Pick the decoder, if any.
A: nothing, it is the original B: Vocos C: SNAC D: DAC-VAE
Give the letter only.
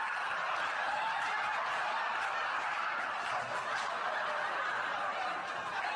A